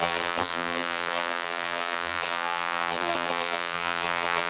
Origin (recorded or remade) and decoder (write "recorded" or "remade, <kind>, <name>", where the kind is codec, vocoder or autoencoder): remade, vocoder, BigVGAN v2